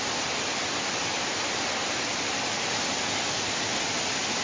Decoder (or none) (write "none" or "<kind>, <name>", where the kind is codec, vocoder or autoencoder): none